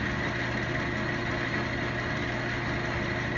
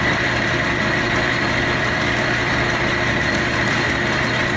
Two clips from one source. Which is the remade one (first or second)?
second